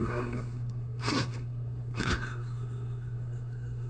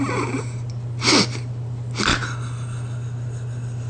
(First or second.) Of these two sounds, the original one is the second